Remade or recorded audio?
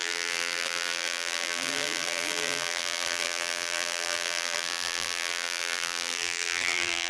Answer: remade